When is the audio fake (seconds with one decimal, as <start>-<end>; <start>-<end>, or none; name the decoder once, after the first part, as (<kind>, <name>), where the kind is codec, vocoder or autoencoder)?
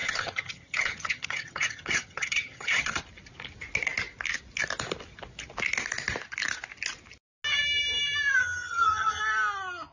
0.0-3.0 (vocoder, HiFi-GAN); 8.4-9.2